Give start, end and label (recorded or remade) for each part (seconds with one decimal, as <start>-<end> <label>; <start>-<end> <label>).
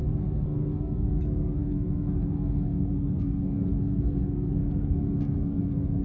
0.0-6.0 remade